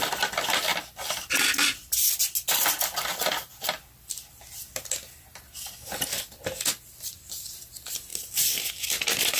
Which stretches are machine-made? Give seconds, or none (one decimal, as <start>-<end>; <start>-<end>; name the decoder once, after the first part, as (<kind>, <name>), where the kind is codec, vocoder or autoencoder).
none